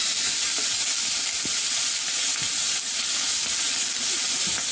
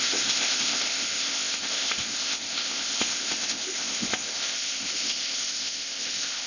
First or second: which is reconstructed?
second